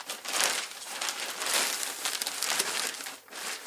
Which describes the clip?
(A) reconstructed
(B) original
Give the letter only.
B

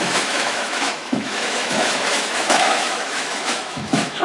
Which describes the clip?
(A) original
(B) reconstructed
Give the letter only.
B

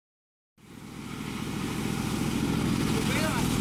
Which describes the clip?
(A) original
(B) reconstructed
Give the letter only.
A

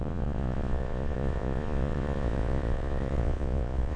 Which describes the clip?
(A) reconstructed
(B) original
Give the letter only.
A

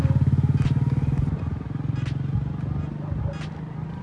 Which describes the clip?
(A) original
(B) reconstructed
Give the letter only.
A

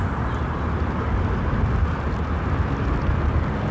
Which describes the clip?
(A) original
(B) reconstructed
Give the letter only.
A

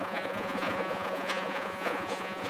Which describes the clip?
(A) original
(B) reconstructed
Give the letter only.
B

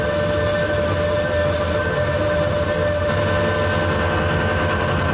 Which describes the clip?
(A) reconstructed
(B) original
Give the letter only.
B